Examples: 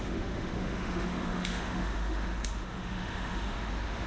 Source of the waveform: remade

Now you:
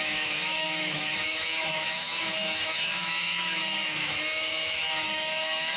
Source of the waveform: remade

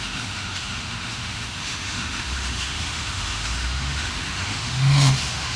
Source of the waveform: remade